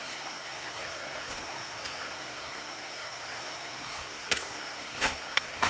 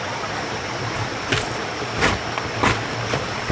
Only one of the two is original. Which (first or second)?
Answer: second